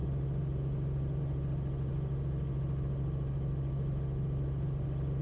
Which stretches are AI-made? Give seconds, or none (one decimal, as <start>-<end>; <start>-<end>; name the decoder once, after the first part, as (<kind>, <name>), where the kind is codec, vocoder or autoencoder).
none